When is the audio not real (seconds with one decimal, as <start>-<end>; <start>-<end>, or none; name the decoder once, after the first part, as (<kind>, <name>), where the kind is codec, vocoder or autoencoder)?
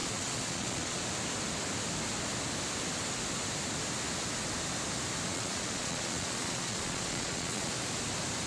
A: 0.0-1.0 (vocoder, Vocos); 5.3-7.7